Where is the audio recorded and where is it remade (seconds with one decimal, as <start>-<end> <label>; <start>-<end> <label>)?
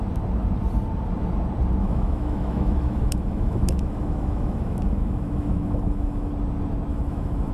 0.0-1.8 recorded; 1.8-6.3 remade; 6.3-6.9 recorded; 6.9-7.5 remade